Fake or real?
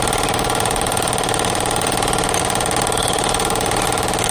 real